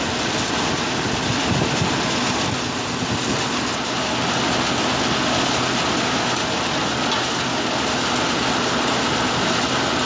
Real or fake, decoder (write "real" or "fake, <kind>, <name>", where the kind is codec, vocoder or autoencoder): real